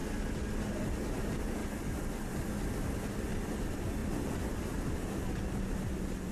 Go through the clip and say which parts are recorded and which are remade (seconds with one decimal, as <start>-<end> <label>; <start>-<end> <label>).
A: 0.0-1.6 recorded; 1.6-2.5 remade; 2.5-4.0 recorded; 4.0-5.4 remade; 5.4-6.3 recorded